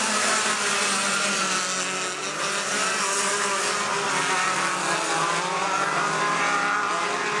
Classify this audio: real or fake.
real